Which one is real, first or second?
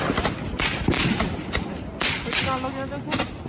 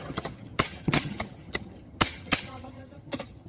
first